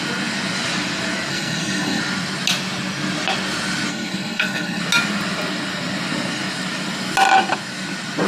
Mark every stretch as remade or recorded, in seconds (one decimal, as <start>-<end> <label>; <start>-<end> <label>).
0.0-1.3 recorded; 1.3-2.0 remade; 2.0-3.9 recorded; 3.9-4.8 remade; 4.8-8.3 recorded